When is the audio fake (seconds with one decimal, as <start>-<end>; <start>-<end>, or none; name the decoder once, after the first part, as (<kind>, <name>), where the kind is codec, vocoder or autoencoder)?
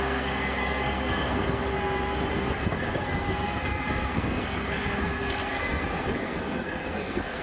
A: 0.0-1.6 (codec, SNAC); 2.3-7.4